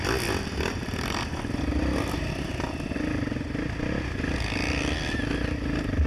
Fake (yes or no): no